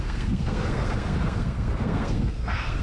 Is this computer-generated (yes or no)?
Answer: yes